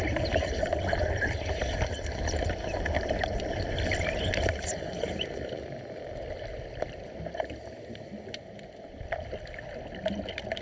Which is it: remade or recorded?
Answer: recorded